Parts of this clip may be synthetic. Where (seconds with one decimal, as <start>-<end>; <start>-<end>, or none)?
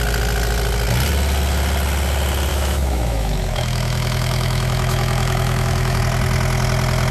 2.5-6.0